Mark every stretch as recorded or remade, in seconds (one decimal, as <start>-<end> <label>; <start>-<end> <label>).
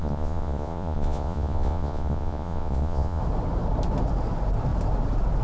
0.0-3.2 remade; 3.2-5.4 recorded